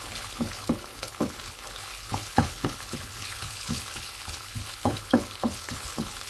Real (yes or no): no